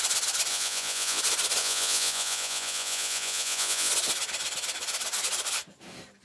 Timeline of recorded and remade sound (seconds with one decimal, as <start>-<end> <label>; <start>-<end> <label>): 0.0-0.5 recorded; 0.5-1.2 remade; 1.2-1.6 recorded; 1.6-3.9 remade; 3.9-6.2 recorded